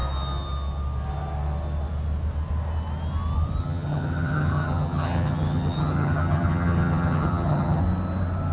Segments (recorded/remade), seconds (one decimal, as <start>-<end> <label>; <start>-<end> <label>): 0.0-3.6 recorded; 3.6-7.8 remade; 7.8-8.5 recorded